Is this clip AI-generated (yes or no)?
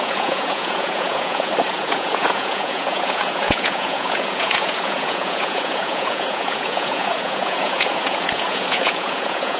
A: yes